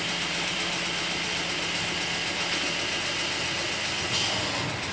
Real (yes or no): yes